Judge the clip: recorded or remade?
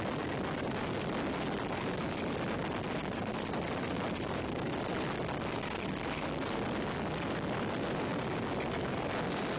recorded